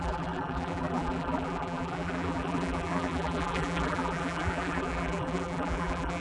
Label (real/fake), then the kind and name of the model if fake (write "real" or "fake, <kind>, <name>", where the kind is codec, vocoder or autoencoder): fake, vocoder, BigVGAN v2